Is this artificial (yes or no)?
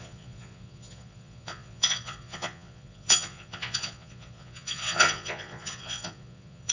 yes